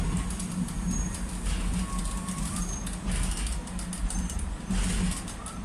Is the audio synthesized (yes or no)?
no